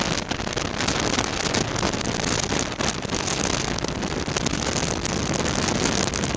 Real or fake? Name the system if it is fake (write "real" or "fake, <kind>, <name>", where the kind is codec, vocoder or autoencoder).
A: real